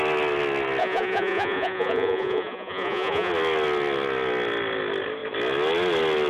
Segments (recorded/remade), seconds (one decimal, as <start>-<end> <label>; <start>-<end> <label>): 0.0-0.8 recorded; 0.8-3.3 remade; 3.3-6.3 recorded